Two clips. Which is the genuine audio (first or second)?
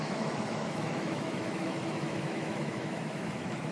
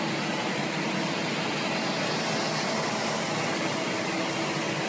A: second